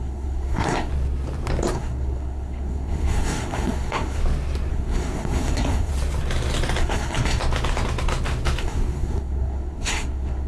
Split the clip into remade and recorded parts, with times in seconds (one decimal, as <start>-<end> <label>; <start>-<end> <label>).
0.0-0.9 remade; 0.9-1.7 recorded; 1.7-4.2 remade; 4.2-4.7 recorded; 4.7-5.9 remade; 5.9-6.8 recorded; 6.8-7.4 remade; 7.4-8.6 recorded; 8.6-10.5 remade